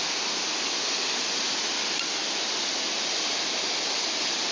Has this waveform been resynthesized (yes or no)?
no